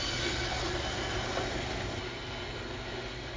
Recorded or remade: recorded